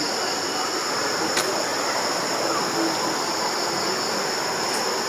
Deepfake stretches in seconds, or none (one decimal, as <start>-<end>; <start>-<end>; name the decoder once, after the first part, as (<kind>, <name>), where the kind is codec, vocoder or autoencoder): none